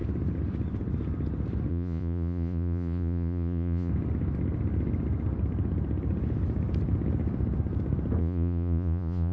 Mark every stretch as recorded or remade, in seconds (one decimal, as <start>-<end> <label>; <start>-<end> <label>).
0.0-1.7 recorded; 1.7-3.9 remade; 3.9-8.2 recorded; 8.2-9.3 remade